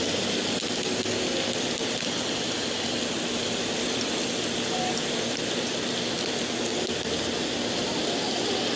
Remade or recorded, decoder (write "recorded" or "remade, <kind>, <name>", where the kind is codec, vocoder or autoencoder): recorded